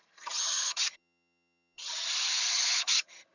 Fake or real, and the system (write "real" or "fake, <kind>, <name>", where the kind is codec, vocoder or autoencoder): fake, vocoder, HiFi-GAN